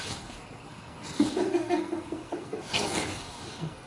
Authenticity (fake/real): fake